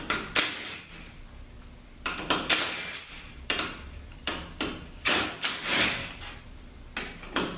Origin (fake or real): fake